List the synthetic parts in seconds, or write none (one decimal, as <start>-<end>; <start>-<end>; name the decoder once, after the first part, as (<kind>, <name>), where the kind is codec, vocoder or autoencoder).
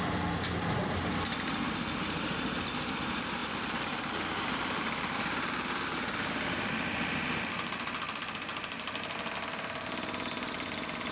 3.4-7.7 (vocoder, BigVGAN v2); 8.5-9.1